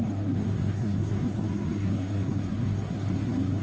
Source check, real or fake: fake